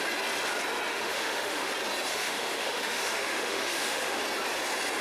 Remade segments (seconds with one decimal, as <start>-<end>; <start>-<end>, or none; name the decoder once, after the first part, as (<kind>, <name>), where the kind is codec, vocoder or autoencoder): 0.9-1.7 (autoencoder, DAC-VAE); 2.1-4.2